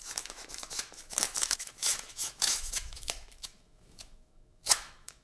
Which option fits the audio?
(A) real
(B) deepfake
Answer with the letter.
B